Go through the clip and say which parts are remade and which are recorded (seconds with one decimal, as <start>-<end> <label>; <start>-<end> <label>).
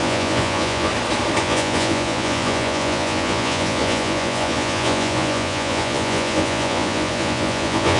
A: 0.0-0.9 remade; 0.9-1.4 recorded; 1.4-8.0 remade